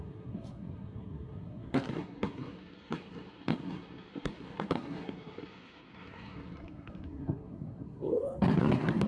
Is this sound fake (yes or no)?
yes